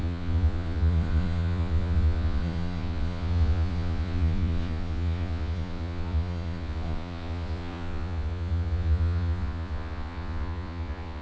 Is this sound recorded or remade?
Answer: remade